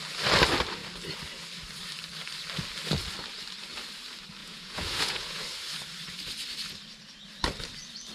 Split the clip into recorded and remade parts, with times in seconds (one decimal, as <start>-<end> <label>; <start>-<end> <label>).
0.0-4.4 recorded; 4.4-5.4 remade; 5.4-8.1 recorded